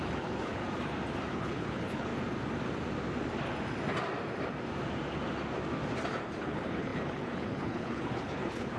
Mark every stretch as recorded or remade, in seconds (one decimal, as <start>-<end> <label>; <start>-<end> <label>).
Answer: 0.0-0.6 remade; 0.6-1.3 recorded; 1.3-2.1 remade; 2.1-6.4 recorded; 6.4-8.8 remade